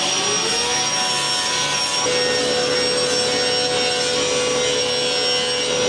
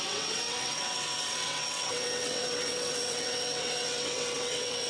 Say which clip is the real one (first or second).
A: first